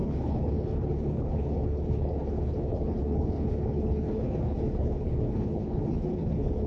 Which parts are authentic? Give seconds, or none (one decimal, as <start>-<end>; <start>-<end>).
none